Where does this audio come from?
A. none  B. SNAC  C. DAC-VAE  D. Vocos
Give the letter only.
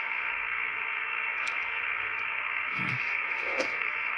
B